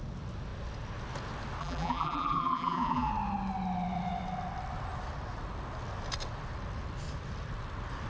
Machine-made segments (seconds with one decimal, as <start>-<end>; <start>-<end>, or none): 1.6-3.1